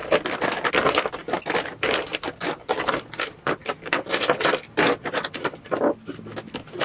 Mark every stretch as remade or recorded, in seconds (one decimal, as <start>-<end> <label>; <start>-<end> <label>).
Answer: 0.0-6.8 recorded